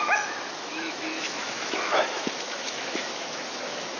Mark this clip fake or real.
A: fake